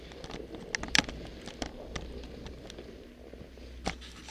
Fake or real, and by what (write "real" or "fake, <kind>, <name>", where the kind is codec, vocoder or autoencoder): real